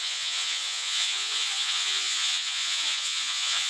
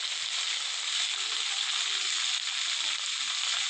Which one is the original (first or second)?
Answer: second